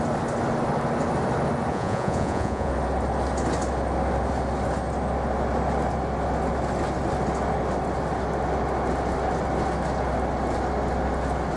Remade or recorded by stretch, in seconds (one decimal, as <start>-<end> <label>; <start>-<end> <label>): 0.0-1.7 recorded; 1.7-2.7 remade; 2.7-11.6 recorded